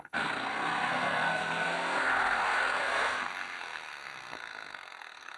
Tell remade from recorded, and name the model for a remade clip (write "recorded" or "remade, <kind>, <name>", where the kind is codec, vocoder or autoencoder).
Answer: remade, codec, SNAC